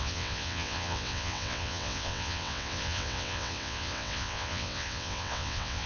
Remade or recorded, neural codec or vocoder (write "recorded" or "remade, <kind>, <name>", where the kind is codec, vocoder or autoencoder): remade, vocoder, WaveNeXt